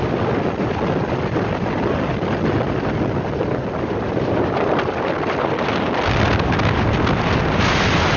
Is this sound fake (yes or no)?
no